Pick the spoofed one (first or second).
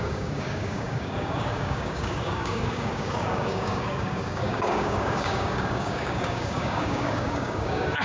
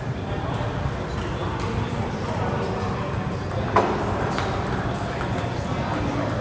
first